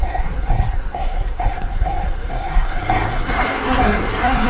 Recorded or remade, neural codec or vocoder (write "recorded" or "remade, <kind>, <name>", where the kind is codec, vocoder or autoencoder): remade, codec, SNAC